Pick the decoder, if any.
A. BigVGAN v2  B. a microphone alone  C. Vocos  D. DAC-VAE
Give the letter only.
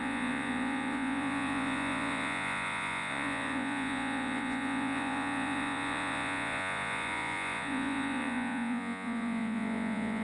C